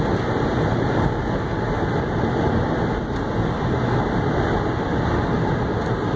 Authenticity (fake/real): real